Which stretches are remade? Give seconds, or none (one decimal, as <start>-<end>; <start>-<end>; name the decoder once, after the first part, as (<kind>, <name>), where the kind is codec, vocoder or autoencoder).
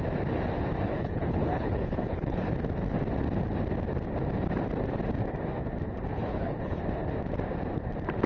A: 0.9-2.5 (codec, HILCodec); 6.1-6.8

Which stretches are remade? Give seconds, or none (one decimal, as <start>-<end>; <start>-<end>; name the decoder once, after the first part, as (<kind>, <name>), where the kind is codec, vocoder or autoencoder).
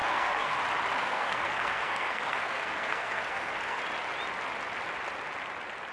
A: 0.0-0.6 (codec, SNAC); 1.0-3.8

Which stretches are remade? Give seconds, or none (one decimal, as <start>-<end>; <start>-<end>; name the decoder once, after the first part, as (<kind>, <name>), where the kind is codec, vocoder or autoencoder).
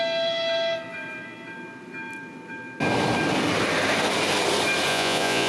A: 4.9-5.5 (vocoder, Vocos)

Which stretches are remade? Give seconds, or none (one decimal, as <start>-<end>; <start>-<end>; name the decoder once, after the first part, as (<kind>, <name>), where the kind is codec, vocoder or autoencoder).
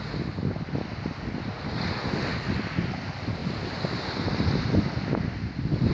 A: none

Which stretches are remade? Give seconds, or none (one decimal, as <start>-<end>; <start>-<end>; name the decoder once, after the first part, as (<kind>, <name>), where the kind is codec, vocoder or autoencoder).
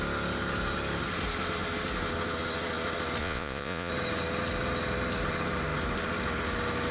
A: 3.2-3.9 (vocoder, Vocos)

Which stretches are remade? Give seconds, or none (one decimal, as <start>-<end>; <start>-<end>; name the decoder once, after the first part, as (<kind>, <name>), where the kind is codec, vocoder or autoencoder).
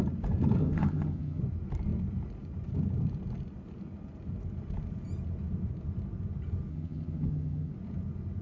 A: 0.6-1.4 (vocoder, HiFi-GAN); 6.7-7.7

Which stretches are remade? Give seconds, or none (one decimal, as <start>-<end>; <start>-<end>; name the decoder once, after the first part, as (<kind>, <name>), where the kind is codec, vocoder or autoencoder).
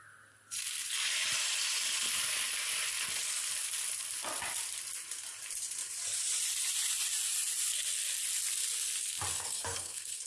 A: 9.3-10.3 (codec, SNAC)